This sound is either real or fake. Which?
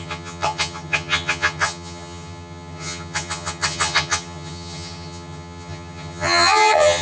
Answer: fake